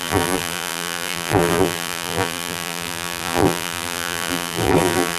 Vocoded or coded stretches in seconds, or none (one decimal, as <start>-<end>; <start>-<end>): 0.0-5.2